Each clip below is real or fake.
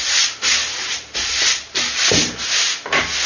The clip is real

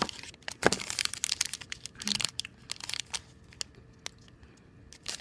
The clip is real